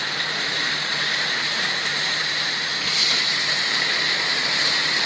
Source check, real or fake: fake